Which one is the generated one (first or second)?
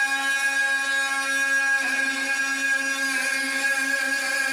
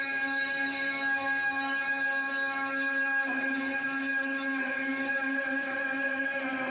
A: second